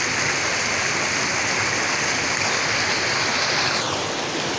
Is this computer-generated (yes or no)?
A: no